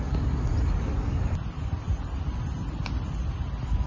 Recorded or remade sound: recorded